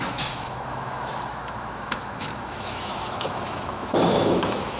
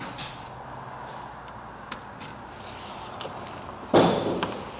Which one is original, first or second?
second